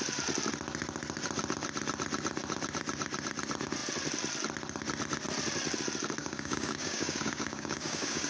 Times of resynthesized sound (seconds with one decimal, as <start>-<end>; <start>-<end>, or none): 6.2-8.3